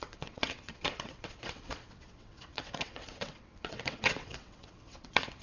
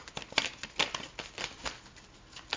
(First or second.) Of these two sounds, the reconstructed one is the first